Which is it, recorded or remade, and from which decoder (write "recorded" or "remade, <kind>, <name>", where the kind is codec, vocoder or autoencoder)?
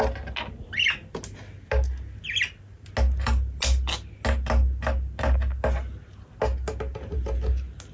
recorded